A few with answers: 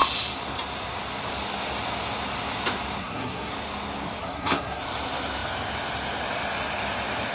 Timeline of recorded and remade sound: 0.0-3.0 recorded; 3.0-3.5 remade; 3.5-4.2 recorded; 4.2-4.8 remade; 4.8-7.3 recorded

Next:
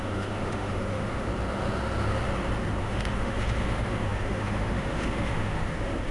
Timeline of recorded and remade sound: 0.0-1.3 remade; 1.3-2.8 recorded; 2.8-6.1 remade

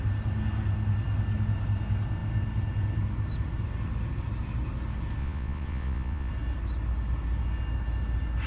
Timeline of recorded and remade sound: 0.0-5.2 recorded; 5.2-6.3 remade; 6.3-8.5 recorded

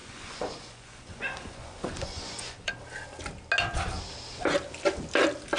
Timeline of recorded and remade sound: 0.0-2.7 remade; 2.7-5.6 recorded

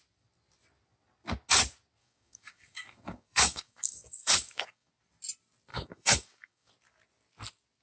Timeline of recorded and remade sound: 0.0-2.0 recorded; 2.0-4.9 remade; 4.9-5.7 recorded; 5.7-6.7 remade; 6.7-7.8 recorded